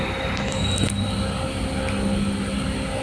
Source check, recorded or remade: recorded